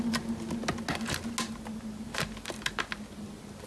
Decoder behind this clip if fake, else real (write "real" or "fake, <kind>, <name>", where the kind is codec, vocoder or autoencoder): real